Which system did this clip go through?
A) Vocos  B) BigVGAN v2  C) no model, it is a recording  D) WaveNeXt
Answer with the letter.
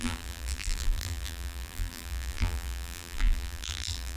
B